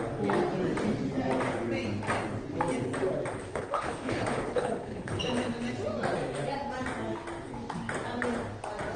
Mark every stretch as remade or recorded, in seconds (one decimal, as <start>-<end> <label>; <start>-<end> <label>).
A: 0.0-3.5 recorded; 3.5-5.2 remade; 5.2-9.0 recorded